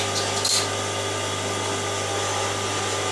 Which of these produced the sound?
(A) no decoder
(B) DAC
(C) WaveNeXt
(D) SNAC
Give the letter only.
A